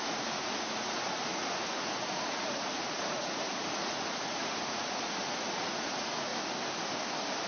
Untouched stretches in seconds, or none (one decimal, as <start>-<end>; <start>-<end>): 6.3-7.5